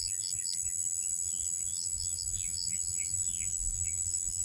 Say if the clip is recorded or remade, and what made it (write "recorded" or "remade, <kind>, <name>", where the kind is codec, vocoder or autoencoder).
remade, vocoder, BigVGAN v2